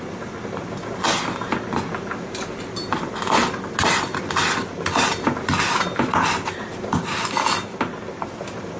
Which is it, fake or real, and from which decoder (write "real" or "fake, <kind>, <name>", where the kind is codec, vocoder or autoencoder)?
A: real